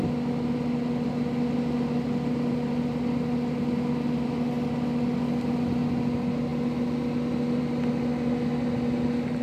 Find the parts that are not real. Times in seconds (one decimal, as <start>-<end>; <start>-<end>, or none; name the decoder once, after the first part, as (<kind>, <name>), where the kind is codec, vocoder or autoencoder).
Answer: none